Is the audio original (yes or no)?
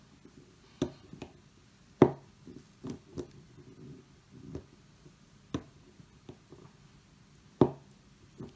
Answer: yes